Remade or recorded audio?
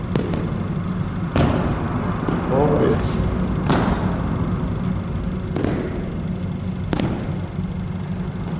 recorded